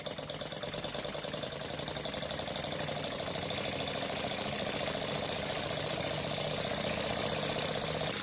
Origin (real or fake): real